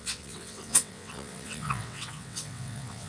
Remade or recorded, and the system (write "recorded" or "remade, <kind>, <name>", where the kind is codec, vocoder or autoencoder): remade, vocoder, WaveNeXt